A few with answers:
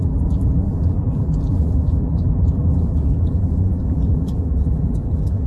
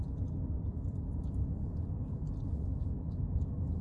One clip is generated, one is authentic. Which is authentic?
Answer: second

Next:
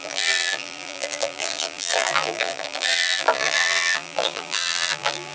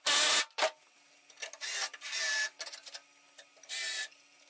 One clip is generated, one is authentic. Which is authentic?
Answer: second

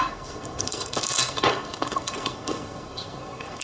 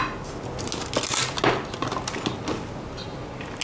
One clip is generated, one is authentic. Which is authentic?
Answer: second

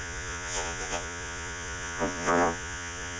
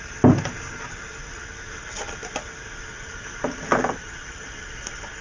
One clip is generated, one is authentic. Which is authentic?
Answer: second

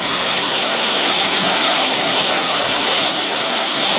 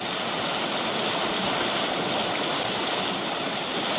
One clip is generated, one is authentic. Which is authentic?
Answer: second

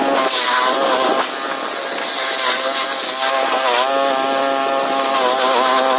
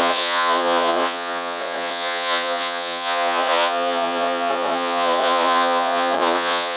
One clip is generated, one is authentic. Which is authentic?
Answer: first